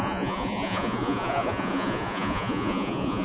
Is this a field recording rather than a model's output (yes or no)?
no